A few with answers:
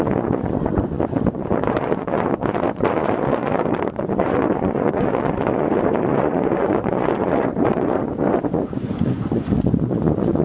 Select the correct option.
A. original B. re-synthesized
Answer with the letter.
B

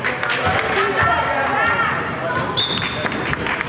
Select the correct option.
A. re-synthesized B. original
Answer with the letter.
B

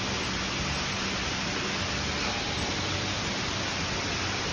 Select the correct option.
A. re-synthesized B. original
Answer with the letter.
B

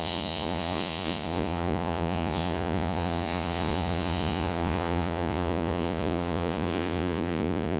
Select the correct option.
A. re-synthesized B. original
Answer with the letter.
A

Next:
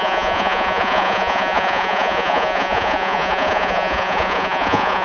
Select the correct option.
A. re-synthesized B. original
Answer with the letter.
A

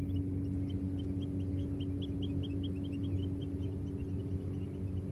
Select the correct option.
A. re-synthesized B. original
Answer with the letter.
B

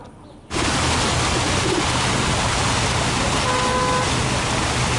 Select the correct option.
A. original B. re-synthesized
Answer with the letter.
A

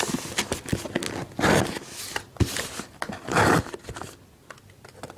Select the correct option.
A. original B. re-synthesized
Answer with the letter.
A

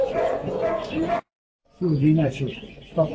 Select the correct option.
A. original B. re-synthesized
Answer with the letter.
B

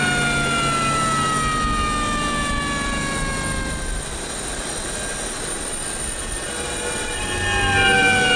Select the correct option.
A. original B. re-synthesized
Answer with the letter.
A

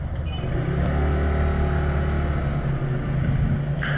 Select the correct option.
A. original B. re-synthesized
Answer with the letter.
A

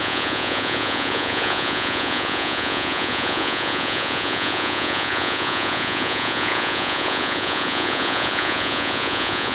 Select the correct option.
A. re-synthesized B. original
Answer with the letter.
A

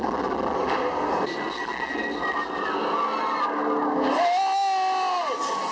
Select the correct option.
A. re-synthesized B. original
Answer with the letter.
B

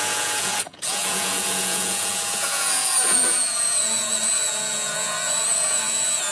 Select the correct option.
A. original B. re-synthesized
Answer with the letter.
B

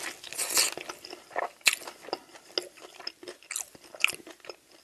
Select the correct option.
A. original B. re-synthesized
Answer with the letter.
A